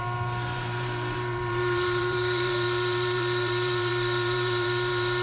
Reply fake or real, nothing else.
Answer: fake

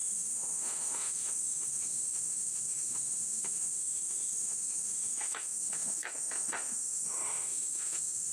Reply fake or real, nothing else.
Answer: fake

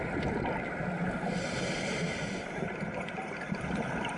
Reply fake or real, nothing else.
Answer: real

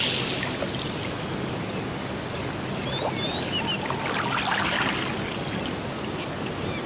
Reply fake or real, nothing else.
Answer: real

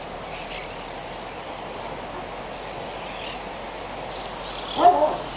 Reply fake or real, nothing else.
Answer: real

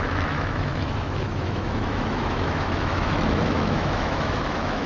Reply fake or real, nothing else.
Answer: fake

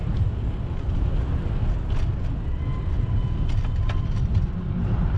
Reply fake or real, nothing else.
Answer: real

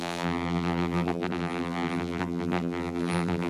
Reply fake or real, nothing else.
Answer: fake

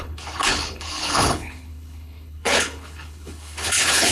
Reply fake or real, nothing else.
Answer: fake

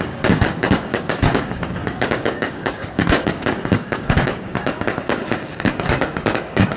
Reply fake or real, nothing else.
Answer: fake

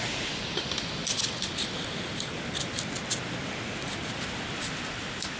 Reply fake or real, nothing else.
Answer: real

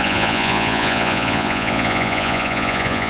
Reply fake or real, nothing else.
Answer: fake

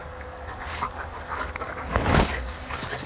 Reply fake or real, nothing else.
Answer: fake